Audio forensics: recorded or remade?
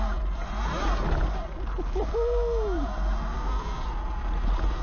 recorded